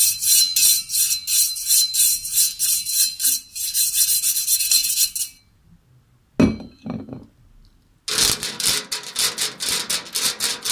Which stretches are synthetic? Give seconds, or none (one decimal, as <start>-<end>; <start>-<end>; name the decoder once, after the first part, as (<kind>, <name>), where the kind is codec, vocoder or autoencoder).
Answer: none